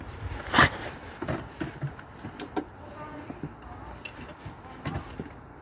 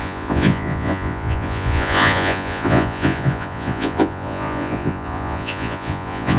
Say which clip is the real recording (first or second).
first